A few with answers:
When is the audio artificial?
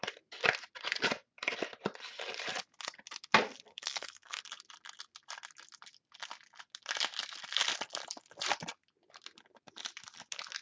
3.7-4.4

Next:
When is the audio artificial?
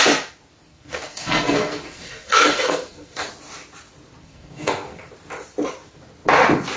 0.7-3.3; 4.2-5.0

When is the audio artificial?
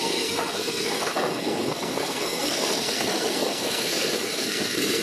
0.0-5.0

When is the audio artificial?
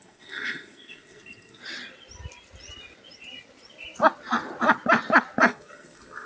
0.0-1.6; 5.4-6.3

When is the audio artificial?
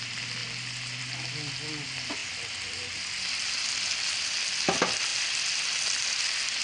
none